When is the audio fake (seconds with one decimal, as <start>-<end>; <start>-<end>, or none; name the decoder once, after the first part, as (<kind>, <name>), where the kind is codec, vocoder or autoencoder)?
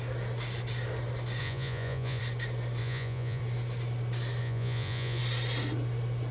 1.4-2.2 (vocoder, Vocos); 2.8-3.4; 4.4-5.2